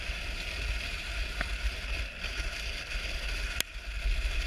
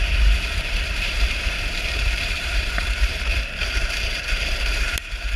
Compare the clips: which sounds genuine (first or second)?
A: first